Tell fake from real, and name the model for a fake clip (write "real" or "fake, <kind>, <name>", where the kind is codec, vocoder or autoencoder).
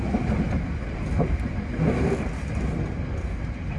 real